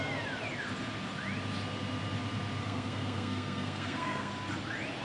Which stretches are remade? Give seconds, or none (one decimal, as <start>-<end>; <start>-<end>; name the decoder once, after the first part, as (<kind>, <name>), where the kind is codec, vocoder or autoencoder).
2.6-4.3 (codec, SNAC)